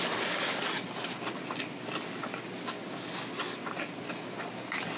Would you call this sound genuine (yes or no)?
yes